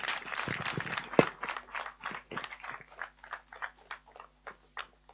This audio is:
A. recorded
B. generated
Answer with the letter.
A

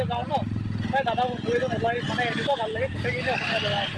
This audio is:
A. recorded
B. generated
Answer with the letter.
A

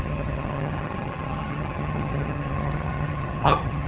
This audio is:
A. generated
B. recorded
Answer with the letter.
A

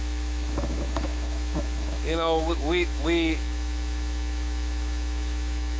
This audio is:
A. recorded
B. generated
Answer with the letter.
B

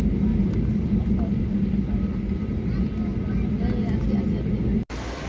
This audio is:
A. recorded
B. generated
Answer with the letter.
A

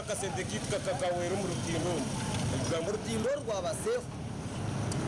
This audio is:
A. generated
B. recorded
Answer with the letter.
B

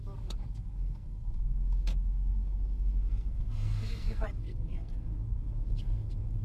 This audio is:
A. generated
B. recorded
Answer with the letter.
A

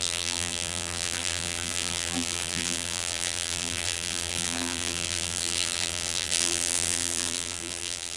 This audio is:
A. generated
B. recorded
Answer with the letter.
A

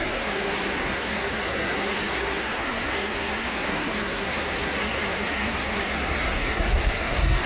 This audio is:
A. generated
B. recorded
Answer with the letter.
A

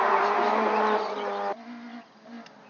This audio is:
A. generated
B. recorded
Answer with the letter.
B